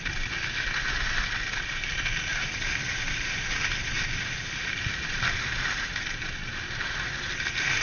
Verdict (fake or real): real